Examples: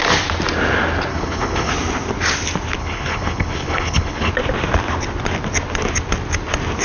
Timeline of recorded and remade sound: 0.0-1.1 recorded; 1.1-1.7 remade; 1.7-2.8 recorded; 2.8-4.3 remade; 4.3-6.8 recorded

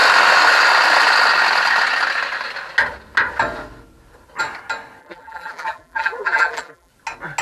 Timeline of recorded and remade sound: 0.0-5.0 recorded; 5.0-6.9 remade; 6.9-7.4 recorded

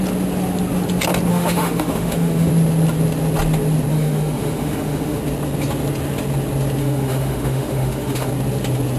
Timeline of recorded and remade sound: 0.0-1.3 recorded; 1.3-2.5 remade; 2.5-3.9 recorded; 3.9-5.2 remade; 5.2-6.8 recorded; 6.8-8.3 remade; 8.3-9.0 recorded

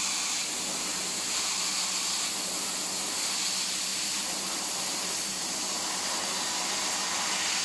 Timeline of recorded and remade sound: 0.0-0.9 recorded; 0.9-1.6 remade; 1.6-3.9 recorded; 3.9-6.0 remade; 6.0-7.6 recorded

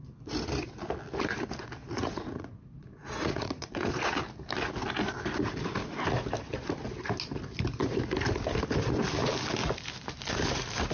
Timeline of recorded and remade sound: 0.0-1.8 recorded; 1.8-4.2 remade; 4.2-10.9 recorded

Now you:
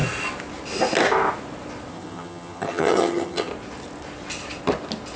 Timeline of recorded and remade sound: 0.0-1.9 recorded; 1.9-3.5 remade; 3.5-5.2 recorded

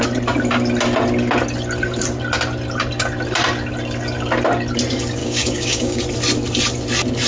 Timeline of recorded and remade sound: 0.0-5.2 recorded; 5.2-6.0 remade; 6.0-7.3 recorded